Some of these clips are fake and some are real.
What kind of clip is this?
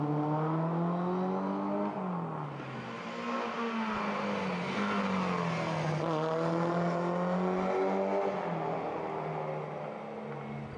real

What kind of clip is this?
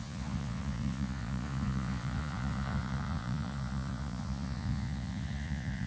fake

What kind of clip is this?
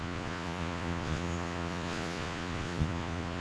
fake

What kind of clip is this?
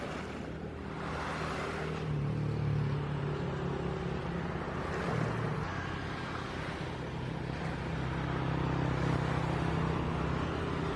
real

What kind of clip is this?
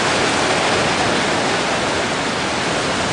real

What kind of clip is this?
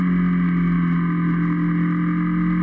real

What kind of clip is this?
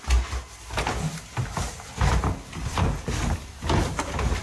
real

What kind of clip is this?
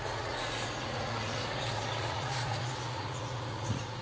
fake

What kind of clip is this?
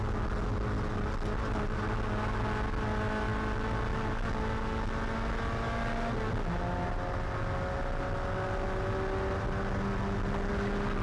real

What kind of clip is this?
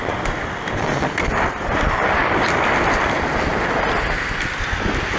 real